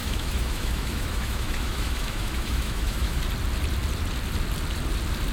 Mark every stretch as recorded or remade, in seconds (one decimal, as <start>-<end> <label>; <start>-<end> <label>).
0.0-3.2 remade; 3.2-5.3 recorded